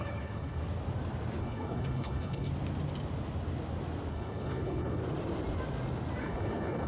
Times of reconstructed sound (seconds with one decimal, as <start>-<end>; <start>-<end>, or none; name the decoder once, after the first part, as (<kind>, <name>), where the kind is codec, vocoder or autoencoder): 0.0-0.6 (codec, HILCodec); 1.4-2.5; 4.1-5.0; 6.2-6.9